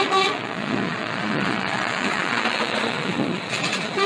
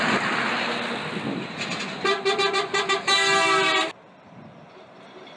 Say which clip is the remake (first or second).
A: first